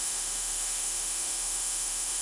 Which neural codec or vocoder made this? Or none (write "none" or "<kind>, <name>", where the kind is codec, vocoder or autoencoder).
autoencoder, DAC-VAE